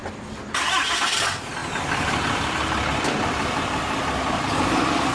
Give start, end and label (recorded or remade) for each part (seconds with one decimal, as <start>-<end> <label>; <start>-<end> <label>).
0.0-5.1 remade